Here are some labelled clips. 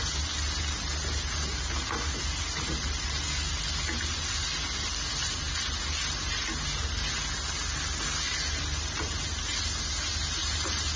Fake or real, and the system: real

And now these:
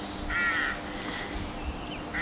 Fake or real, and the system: real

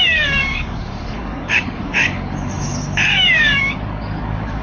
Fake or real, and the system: fake, codec, DAC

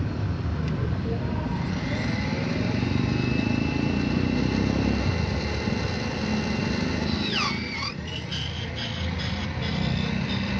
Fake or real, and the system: real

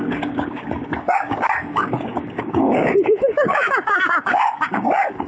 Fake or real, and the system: fake, codec, DAC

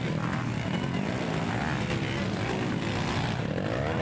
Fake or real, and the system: real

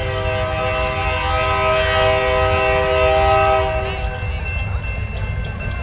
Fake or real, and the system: real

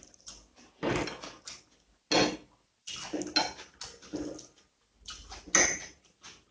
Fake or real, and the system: real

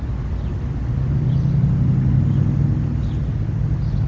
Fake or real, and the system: real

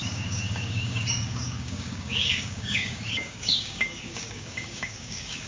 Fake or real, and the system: fake, codec, DAC